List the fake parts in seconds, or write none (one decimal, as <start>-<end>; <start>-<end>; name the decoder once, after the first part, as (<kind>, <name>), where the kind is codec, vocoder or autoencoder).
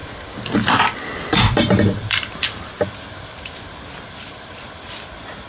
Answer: 1.3-2.7 (vocoder, BigVGAN v2)